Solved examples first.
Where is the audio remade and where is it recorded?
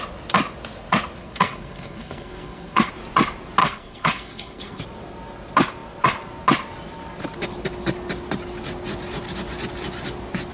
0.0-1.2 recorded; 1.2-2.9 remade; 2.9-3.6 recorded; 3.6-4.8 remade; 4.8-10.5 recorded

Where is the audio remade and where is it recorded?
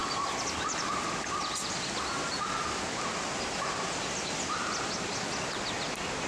0.0-6.3 recorded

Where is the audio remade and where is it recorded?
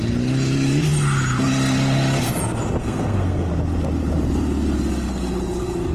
0.0-2.8 recorded; 2.8-3.5 remade; 3.5-5.9 recorded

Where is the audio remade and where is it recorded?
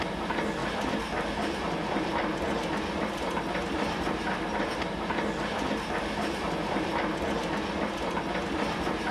0.0-9.1 recorded